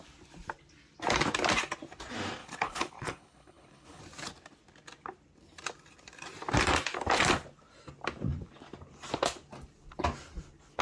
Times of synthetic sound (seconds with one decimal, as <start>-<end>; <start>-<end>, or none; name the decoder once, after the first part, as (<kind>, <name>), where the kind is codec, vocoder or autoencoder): 2.4-4.0 (codec, HILCodec)